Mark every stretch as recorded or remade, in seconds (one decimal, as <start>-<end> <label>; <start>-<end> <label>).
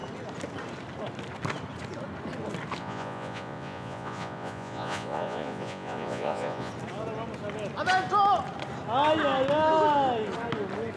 0.0-2.8 recorded; 2.8-6.7 remade; 6.7-11.0 recorded